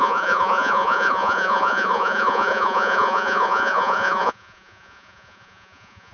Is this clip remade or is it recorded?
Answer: remade